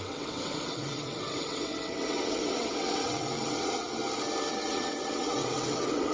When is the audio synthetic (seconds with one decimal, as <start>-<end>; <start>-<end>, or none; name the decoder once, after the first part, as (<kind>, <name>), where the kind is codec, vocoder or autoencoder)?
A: 0.0-4.0 (vocoder, WaveNeXt); 4.5-6.1